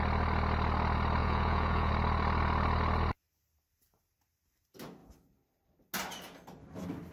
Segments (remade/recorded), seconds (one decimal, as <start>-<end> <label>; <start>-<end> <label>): 0.0-1.2 recorded; 1.2-1.9 remade; 1.9-7.1 recorded